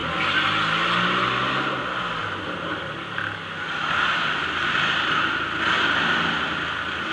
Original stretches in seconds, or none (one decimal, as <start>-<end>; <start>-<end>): 0.0-4.6; 6.0-7.1